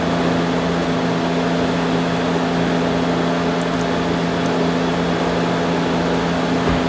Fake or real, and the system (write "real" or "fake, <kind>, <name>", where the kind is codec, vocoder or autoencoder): real